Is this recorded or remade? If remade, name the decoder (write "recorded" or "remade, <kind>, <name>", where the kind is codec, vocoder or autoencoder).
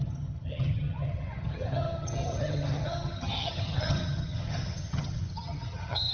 remade, vocoder, HiFi-GAN